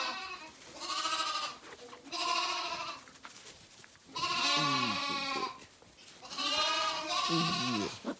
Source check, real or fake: real